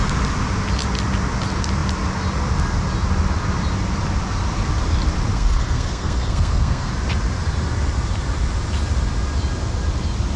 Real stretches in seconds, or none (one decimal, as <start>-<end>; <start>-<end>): 0.0-5.3; 6.9-10.4